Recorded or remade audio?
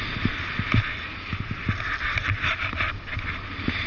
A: recorded